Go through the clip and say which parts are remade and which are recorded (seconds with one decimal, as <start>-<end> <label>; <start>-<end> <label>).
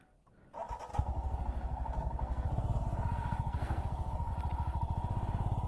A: 0.0-0.9 recorded; 0.9-4.3 remade; 4.3-5.7 recorded